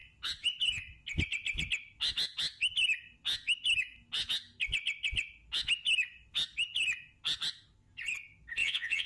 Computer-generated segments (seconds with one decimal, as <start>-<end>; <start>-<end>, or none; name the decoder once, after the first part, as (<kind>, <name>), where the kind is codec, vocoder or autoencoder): 8.6-9.1 (vocoder, Vocos)